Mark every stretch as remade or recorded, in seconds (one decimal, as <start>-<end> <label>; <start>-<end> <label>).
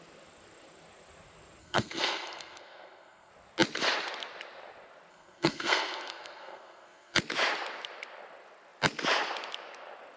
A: 0.0-1.6 recorded; 1.6-3.3 remade; 3.3-5.1 recorded; 5.1-7.2 remade; 7.2-10.2 recorded